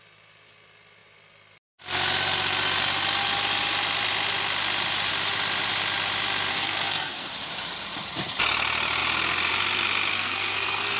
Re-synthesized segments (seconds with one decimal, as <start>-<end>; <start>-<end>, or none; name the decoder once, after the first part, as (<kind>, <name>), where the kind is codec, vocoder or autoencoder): 6.5-7.3 (codec, SNAC); 10.1-11.0